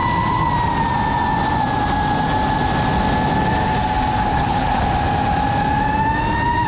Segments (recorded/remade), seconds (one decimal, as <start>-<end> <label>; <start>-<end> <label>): 0.0-4.3 recorded; 4.3-4.8 remade; 4.8-6.7 recorded